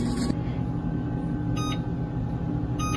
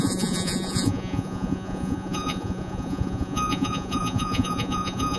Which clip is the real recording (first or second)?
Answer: first